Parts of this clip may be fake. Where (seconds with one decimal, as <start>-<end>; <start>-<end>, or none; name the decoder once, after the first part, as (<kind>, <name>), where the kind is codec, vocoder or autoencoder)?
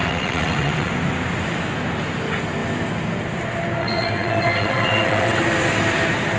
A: 0.0-0.9 (vocoder, WaveNeXt); 3.8-5.4